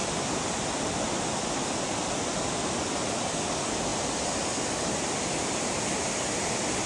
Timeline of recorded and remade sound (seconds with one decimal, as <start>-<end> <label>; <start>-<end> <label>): 0.0-6.9 recorded